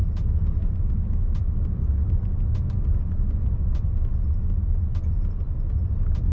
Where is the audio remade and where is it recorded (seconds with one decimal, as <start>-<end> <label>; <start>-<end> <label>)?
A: 0.0-0.7 remade; 0.7-3.0 recorded; 3.0-3.7 remade; 3.7-6.3 recorded